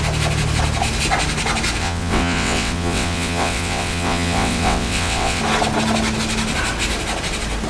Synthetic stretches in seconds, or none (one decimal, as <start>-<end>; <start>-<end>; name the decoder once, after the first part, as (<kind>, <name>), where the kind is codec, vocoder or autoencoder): 1.8-5.4 (vocoder, WaveNeXt)